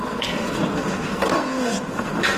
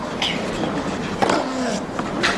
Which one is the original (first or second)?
second